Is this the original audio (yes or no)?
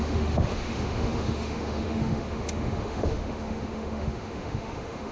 no